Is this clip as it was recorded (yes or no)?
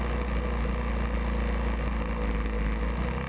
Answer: yes